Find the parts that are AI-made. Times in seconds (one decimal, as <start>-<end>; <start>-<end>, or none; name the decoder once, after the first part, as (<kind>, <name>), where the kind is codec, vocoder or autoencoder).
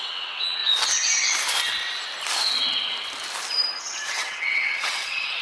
0.0-0.6 (vocoder, WaveNeXt); 3.8-5.4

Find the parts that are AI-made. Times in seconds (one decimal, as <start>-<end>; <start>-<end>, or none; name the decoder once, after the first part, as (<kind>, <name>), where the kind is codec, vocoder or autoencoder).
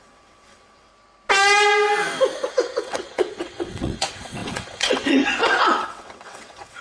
0.0-0.9 (vocoder, WaveNeXt); 2.5-6.8